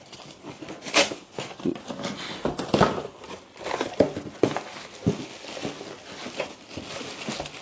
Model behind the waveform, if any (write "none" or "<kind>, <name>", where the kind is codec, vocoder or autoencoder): none